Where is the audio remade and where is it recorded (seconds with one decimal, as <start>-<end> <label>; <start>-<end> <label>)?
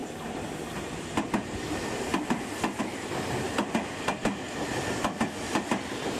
0.0-2.8 remade; 2.8-6.2 recorded